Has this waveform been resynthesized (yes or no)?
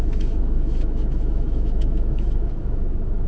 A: yes